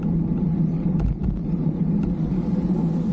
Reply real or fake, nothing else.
real